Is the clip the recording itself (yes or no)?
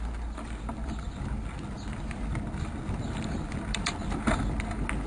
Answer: yes